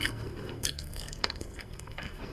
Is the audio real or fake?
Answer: fake